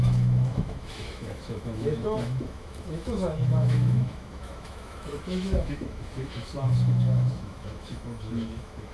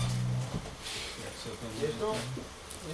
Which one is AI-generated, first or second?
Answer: first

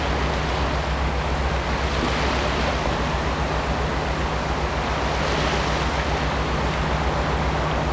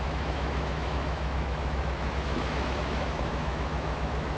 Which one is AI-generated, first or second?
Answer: second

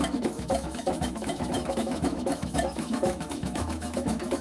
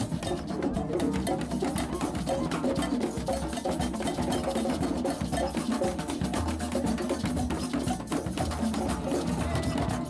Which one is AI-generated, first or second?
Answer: first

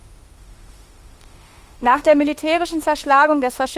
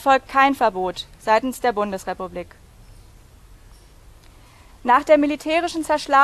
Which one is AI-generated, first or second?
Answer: first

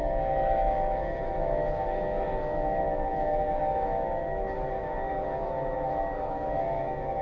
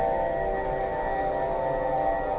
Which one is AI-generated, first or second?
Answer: first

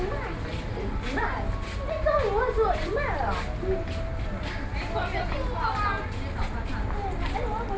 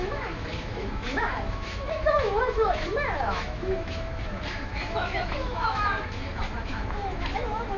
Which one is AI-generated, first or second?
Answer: second